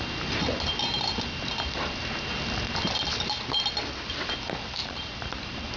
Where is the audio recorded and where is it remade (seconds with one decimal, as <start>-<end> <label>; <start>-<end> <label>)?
0.0-4.8 recorded; 4.8-5.8 remade